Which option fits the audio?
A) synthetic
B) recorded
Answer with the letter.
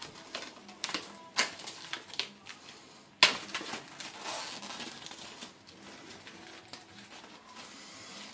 B